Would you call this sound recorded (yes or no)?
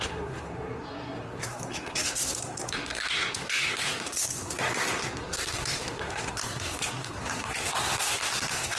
no